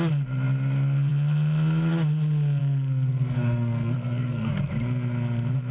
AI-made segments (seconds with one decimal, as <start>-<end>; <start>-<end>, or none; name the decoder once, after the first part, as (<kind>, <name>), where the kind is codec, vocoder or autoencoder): 2.6-4.5 (codec, SNAC)